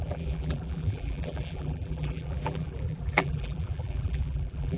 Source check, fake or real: fake